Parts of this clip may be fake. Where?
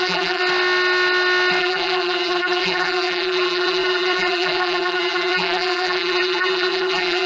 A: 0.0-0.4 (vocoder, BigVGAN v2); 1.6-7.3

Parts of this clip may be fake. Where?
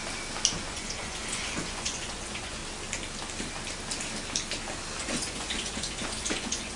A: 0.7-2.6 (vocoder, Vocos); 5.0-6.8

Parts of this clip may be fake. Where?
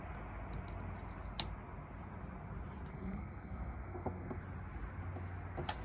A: 2.9-4.4 (codec, SNAC)